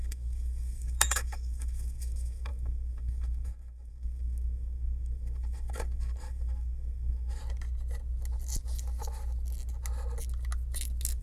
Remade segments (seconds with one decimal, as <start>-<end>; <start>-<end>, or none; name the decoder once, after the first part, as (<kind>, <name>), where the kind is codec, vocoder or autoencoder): 0.0-7.4 (codec, SNAC)

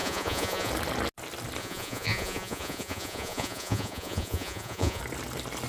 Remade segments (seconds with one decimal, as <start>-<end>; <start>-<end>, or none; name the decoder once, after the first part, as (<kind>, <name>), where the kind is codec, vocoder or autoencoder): 0.0-0.7 (vocoder, Vocos); 1.6-5.0

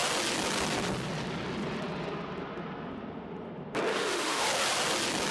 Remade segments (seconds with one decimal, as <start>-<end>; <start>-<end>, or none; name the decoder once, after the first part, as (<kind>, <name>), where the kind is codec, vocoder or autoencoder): 3.9-4.4 (autoencoder, DAC-VAE)

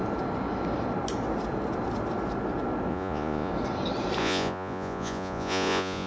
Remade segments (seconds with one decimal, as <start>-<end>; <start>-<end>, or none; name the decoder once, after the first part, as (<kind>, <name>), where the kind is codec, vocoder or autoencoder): 2.9-3.5 (vocoder, Vocos); 4.2-6.1

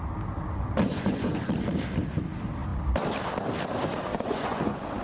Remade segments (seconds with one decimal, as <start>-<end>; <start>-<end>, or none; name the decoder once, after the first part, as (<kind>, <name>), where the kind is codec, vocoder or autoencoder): 0.9-1.4 (vocoder, Vocos); 4.1-5.0

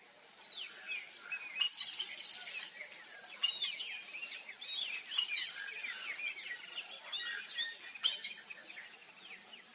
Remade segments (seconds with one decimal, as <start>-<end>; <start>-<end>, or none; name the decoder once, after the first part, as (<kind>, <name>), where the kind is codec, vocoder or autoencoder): none